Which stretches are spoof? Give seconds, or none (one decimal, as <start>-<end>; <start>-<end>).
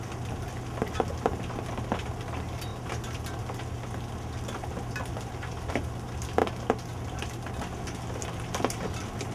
none